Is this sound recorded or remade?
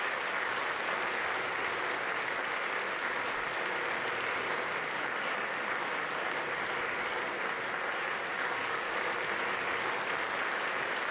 recorded